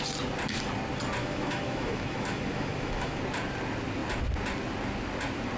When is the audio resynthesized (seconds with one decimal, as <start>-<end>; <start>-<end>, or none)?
1.2-3.2

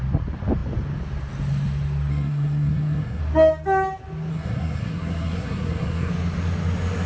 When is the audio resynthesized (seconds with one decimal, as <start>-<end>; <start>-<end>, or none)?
2.1-3.2; 4.3-6.1

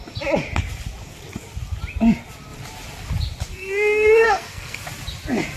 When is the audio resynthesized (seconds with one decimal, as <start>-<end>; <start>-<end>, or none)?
3.5-4.8

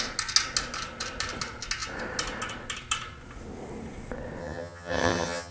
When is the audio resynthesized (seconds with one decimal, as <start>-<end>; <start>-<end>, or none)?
4.4-5.5